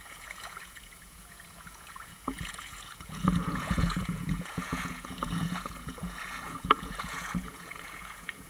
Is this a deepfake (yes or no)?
yes